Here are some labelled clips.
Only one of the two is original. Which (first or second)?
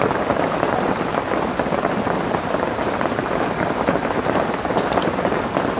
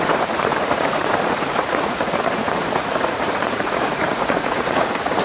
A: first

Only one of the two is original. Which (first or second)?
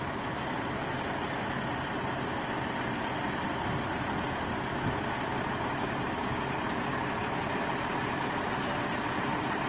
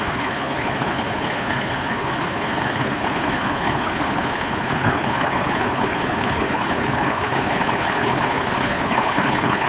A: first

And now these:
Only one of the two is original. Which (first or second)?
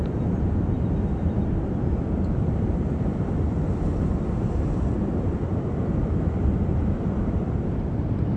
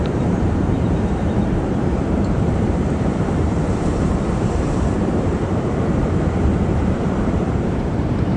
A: first